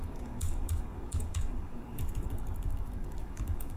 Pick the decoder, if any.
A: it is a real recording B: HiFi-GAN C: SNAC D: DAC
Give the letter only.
D